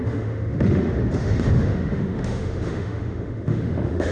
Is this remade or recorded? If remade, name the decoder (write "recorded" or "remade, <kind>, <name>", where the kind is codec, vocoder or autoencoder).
remade, autoencoder, DAC-VAE